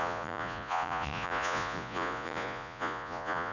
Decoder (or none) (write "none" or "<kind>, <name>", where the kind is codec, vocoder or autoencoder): vocoder, Vocos